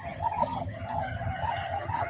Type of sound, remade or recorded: remade